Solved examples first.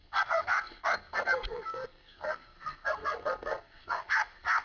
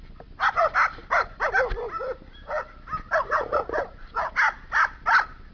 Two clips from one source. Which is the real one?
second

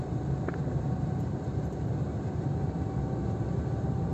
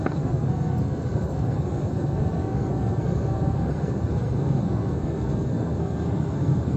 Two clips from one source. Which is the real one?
first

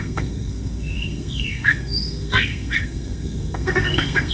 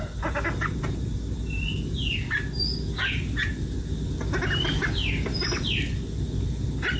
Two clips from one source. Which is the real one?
second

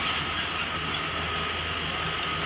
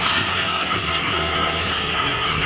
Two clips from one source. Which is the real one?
first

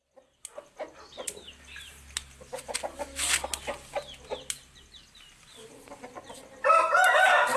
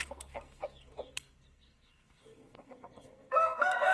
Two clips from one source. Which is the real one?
first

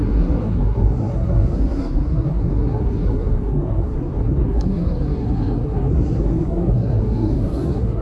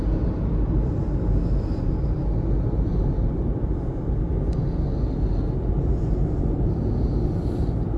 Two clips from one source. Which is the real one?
second